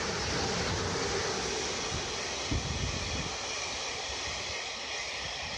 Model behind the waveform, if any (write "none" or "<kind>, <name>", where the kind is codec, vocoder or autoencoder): none